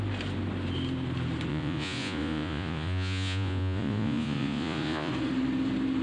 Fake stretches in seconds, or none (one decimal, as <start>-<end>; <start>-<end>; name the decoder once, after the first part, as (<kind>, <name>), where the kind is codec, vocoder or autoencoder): 1.5-5.1 (vocoder, Vocos)